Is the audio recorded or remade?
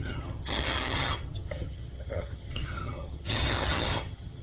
remade